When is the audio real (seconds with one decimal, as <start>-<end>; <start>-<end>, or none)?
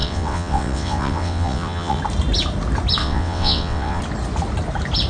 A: 2.0-3.0; 4.0-5.1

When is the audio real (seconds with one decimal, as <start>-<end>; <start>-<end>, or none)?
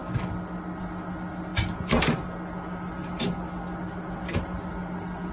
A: 0.0-5.3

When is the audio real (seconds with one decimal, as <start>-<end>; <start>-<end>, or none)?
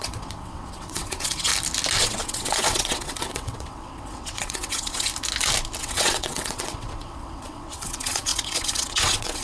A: 1.5-2.0; 5.1-5.8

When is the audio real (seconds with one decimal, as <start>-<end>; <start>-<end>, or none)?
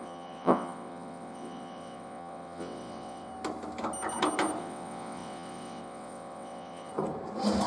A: 3.3-4.6; 6.9-7.7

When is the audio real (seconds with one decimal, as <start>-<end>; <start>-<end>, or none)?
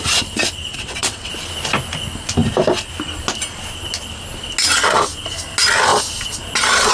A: 0.0-0.7; 1.3-6.9